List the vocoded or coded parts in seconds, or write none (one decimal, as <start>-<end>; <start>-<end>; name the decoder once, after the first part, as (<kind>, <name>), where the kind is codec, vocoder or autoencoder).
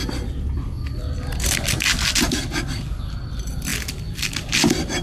none